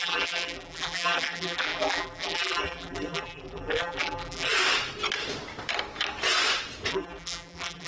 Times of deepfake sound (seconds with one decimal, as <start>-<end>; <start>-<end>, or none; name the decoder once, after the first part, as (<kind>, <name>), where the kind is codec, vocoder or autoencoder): 0.0-4.5 (vocoder, BigVGAN v2); 6.9-7.9